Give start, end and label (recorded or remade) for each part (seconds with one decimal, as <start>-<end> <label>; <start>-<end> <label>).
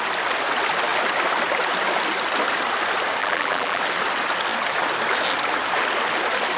0.0-3.2 recorded; 3.2-3.8 remade; 3.8-6.6 recorded